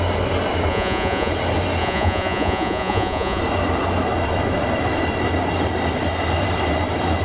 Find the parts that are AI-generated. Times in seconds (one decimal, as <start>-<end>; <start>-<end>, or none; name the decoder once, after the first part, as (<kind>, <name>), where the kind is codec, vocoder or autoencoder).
0.7-1.3 (vocoder, Vocos); 1.8-3.4